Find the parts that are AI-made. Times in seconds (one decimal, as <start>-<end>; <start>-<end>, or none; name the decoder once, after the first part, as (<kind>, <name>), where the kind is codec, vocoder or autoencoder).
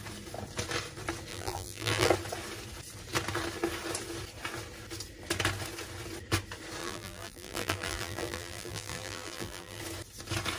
1.3-2.1 (vocoder, BigVGAN v2); 6.8-9.8